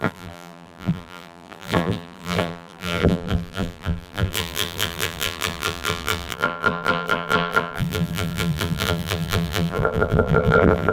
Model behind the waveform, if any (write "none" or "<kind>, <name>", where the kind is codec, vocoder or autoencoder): vocoder, BigVGAN v2